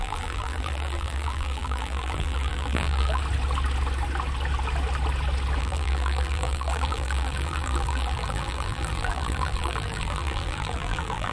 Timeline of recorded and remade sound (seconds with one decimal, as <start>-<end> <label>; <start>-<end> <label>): 0.0-3.2 remade; 3.2-5.6 recorded; 5.6-11.3 remade